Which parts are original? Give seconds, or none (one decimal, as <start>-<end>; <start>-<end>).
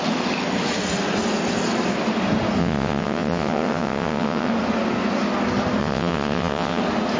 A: 0.0-2.6; 4.5-5.8; 6.8-7.2